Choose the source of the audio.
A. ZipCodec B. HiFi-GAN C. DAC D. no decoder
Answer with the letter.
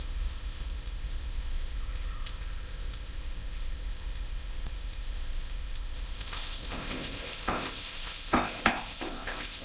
A